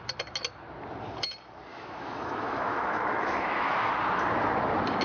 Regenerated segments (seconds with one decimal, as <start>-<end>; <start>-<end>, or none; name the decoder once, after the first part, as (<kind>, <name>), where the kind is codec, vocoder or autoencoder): 1.7-3.9 (autoencoder, DAC-VAE)

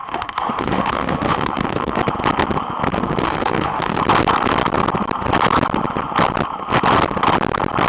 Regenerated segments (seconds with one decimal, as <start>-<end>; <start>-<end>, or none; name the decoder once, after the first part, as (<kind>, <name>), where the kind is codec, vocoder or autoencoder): 0.0-2.0 (autoencoder, DAC-VAE); 3.2-4.0

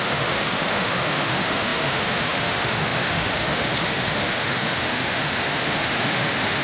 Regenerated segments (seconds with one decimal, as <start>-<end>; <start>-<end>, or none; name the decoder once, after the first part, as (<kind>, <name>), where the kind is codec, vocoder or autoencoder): 0.0-6.6 (autoencoder, DAC-VAE)

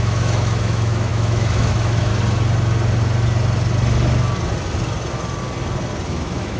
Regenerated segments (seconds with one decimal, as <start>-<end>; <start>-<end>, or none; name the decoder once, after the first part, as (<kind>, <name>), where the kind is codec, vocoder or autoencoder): 0.0-2.1 (autoencoder, DAC-VAE); 6.1-6.6

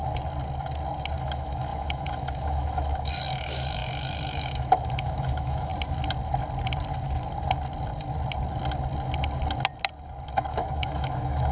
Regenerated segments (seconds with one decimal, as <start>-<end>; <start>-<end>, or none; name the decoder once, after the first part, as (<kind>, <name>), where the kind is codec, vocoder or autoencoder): 1.2-5.7 (autoencoder, DAC-VAE); 10.5-11.5

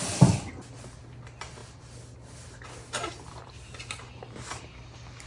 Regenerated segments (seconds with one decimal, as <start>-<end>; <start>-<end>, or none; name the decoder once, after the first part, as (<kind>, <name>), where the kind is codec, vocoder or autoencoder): none

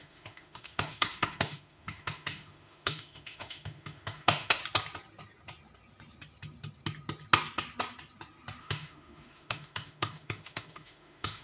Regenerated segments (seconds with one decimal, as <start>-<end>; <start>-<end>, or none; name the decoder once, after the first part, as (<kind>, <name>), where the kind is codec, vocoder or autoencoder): 0.0-4.6 (autoencoder, DAC-VAE); 8.6-11.4